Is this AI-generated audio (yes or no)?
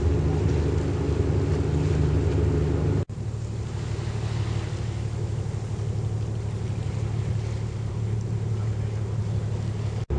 no